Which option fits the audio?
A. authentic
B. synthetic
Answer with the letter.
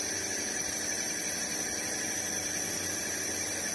A